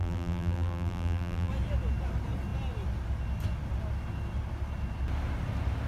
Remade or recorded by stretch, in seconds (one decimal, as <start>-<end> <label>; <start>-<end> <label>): 0.0-1.5 remade; 1.5-5.9 recorded